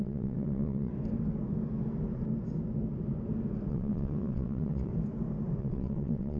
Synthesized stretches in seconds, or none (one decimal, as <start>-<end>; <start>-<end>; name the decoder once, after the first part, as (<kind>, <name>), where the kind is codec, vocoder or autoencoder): 0.0-0.9 (vocoder, WaveNeXt); 3.7-4.9; 5.6-6.4